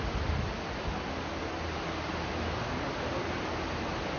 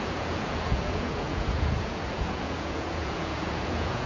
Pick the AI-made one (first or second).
second